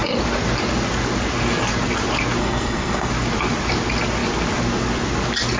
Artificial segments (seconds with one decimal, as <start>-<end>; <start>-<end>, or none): 2.4-3.1